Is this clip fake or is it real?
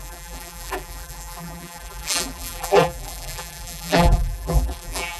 fake